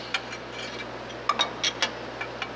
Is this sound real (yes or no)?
yes